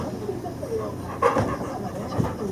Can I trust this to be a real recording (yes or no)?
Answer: yes